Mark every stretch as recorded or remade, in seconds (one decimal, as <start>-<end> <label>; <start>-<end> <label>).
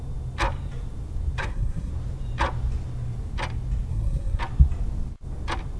0.0-1.4 recorded; 1.4-1.9 remade; 1.9-3.9 recorded; 3.9-4.4 remade; 4.4-5.8 recorded